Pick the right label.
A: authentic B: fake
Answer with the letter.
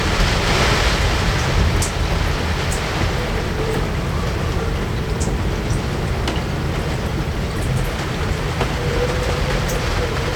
A